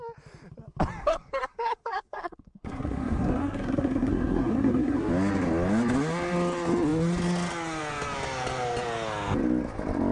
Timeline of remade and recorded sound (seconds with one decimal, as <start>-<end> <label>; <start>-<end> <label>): 0.0-1.0 recorded; 1.0-5.1 remade; 5.1-10.1 recorded